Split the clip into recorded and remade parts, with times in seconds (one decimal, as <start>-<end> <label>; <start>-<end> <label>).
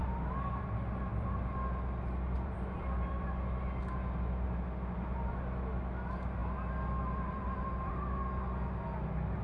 0.0-0.7 remade; 0.7-1.1 recorded; 1.1-5.3 remade; 5.3-6.4 recorded; 6.4-7.9 remade; 7.9-9.4 recorded